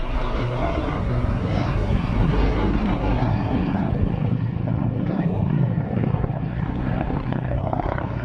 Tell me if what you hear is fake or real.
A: fake